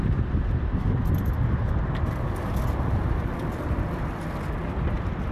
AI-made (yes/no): no